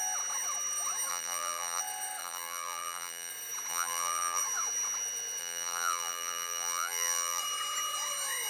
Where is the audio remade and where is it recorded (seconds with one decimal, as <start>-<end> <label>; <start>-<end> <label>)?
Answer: 0.0-1.1 recorded; 1.1-1.8 remade; 1.8-2.2 recorded; 2.2-3.3 remade; 3.3-3.7 recorded; 3.7-4.4 remade; 4.4-5.4 recorded; 5.4-7.4 remade; 7.4-8.5 recorded